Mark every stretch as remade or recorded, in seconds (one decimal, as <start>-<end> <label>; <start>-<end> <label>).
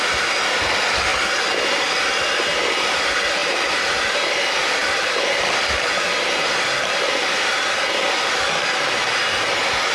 0.0-9.9 recorded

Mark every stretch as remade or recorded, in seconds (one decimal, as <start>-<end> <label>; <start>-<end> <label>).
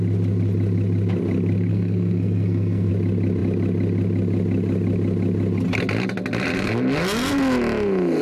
0.0-1.7 recorded; 1.7-2.9 remade; 2.9-8.2 recorded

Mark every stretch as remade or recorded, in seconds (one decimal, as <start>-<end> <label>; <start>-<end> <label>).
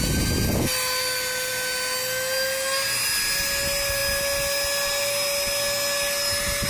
0.0-6.7 recorded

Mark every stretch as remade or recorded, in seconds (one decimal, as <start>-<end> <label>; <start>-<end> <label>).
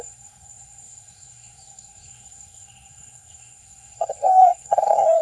0.0-5.2 remade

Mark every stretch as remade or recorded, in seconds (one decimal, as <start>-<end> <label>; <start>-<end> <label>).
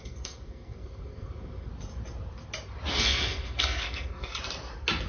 0.0-1.7 remade; 1.7-2.9 recorded; 2.9-4.3 remade; 4.3-5.1 recorded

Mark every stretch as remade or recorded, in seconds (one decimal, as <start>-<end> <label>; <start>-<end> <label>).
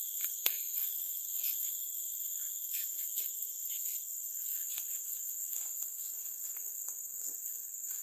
0.0-8.0 remade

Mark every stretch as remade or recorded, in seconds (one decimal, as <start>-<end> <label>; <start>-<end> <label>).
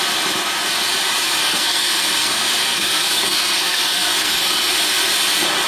0.0-1.4 recorded; 1.4-4.7 remade; 4.7-5.7 recorded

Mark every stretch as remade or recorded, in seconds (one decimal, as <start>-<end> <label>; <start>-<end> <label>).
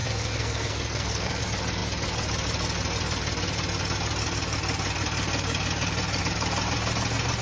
0.0-1.4 remade; 1.4-7.4 recorded